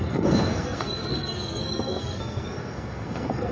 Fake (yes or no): yes